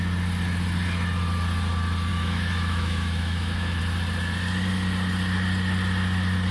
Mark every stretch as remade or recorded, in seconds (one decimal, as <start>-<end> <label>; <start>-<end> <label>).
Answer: 0.0-2.1 recorded; 2.1-3.8 remade; 3.8-6.5 recorded